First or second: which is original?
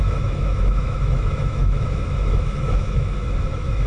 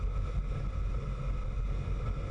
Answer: second